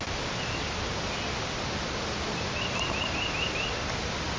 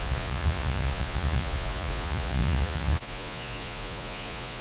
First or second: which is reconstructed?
second